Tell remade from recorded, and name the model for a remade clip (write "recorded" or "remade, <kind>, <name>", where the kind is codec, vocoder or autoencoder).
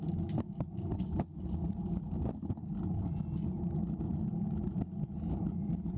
recorded